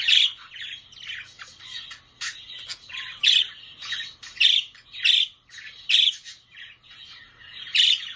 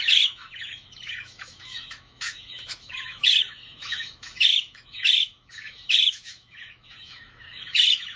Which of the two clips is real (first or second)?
first